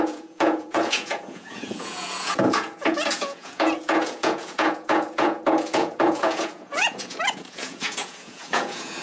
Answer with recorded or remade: remade